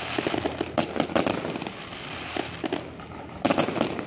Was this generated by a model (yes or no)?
no